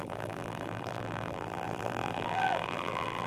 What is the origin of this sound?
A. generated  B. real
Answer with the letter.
A